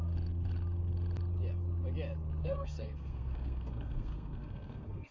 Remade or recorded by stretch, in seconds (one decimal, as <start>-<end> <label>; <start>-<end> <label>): 0.0-2.4 recorded; 2.4-5.1 remade